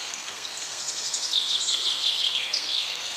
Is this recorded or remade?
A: remade